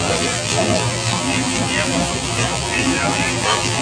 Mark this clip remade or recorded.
remade